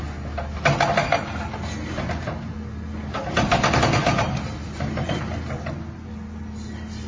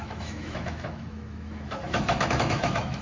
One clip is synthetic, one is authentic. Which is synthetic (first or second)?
second